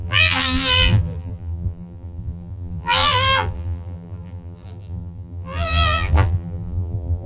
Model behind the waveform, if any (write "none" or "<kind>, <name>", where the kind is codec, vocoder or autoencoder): vocoder, BigVGAN v2